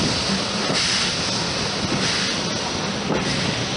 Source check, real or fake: real